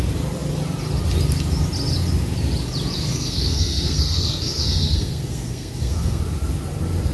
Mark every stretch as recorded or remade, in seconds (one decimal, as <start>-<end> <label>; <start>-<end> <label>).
0.0-3.1 recorded; 3.1-6.2 remade; 6.2-7.1 recorded